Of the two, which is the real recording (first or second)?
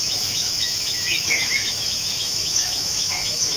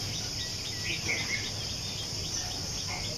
second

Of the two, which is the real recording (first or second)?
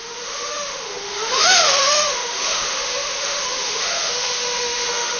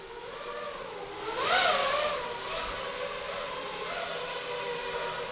second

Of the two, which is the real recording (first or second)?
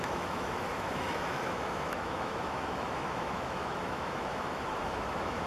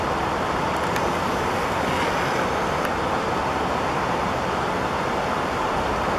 second